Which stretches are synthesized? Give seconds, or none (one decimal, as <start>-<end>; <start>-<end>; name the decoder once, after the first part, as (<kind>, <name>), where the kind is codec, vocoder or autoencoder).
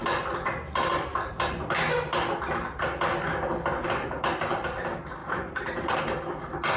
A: 3.7-4.4 (vocoder, BigVGAN v2); 5.2-6.0